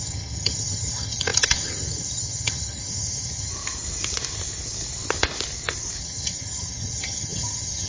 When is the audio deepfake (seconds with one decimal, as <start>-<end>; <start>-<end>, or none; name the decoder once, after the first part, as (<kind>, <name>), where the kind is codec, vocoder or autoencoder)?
0.0-3.5 (vocoder, HiFi-GAN); 6.0-7.9